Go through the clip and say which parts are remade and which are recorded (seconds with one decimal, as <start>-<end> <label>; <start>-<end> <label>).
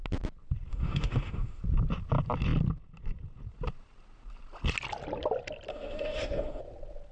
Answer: 0.0-0.7 recorded; 0.7-1.6 remade; 1.6-5.7 recorded; 5.7-6.6 remade; 6.6-7.1 recorded